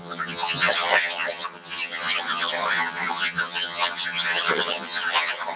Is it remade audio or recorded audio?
remade